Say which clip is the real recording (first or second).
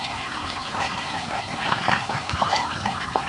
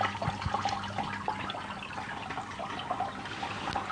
second